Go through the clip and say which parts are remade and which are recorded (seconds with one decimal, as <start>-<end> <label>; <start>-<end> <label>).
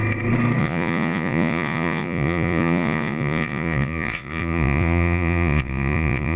0.0-0.6 recorded; 0.6-6.4 remade